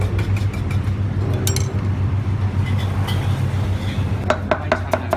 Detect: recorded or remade recorded